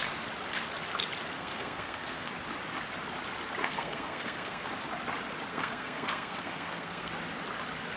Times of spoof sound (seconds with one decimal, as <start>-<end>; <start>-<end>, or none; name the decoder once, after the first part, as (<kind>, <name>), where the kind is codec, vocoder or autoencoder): 1.3-2.3 (codec, SNAC); 3.6-4.7; 5.5-7.1